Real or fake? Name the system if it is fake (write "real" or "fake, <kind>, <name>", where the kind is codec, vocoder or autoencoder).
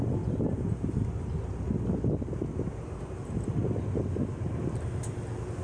real